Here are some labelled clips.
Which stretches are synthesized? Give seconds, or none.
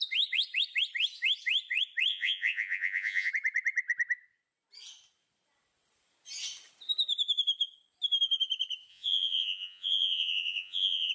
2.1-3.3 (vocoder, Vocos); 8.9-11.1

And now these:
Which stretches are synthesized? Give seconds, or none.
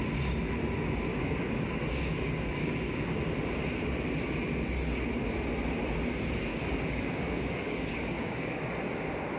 1.1-3.2 (codec, DAC); 6.5-8.7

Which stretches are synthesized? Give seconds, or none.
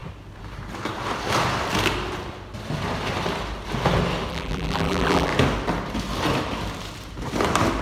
4.3-5.3 (vocoder, BigVGAN v2)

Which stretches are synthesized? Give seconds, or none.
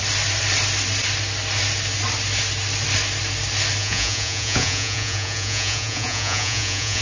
3.8-7.0 (vocoder, Vocos)